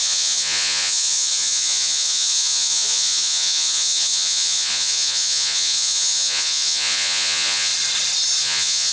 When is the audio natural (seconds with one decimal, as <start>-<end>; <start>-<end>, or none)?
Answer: 7.7-8.4